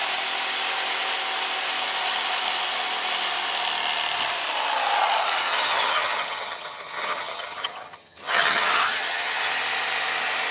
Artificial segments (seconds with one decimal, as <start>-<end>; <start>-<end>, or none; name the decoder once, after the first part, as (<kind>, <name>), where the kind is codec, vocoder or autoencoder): 5.4-9.5 (vocoder, HiFi-GAN)